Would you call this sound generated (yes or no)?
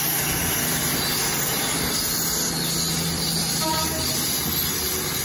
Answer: no